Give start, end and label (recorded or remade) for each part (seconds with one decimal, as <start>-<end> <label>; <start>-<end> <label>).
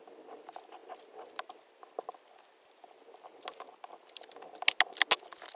0.0-5.5 recorded